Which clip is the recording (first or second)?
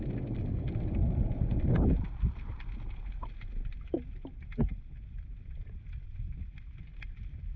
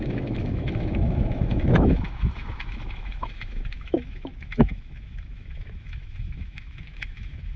first